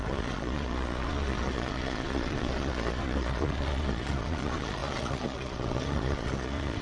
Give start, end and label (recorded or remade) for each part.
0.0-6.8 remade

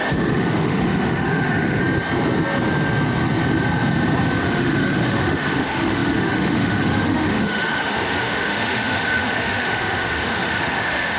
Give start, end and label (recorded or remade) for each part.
0.0-1.8 remade; 1.8-4.4 recorded; 4.4-11.2 remade

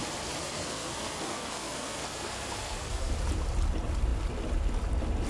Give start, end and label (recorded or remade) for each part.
0.0-0.4 recorded; 0.4-3.1 remade; 3.1-5.3 recorded

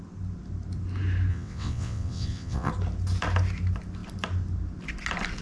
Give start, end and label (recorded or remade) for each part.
0.0-1.3 recorded; 1.3-2.7 remade; 2.7-5.4 recorded

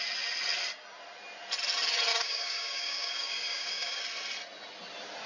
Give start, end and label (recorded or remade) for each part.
0.0-2.1 recorded; 2.1-4.0 remade; 4.0-5.3 recorded